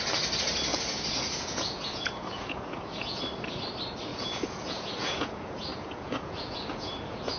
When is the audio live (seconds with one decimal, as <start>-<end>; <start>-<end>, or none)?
0.0-0.7; 3.2-4.1